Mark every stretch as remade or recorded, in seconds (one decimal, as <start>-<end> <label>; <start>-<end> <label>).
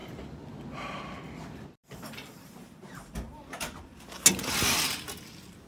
0.0-1.8 recorded; 1.8-3.4 remade; 3.4-5.7 recorded